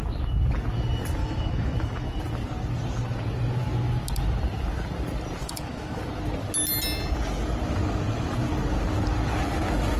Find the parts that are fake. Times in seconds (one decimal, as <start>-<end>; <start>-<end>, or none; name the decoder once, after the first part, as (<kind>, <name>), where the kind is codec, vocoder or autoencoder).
1.2-2.2 (autoencoder, DAC-VAE); 5.4-6.0